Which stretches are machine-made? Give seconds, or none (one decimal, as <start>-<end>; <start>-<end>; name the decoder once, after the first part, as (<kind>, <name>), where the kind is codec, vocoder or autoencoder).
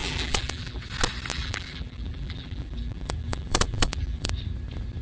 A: 0.0-0.8 (vocoder, BigVGAN v2); 1.3-4.3